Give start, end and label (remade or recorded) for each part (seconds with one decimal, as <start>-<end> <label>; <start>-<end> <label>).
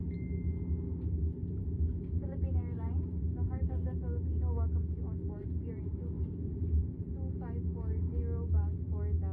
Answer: 0.0-1.4 recorded; 1.4-3.7 remade; 3.7-5.4 recorded; 5.4-7.1 remade; 7.1-9.3 recorded